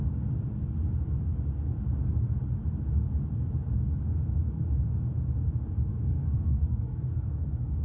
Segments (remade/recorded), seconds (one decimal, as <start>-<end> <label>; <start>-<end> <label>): 0.0-5.9 recorded; 5.9-7.8 remade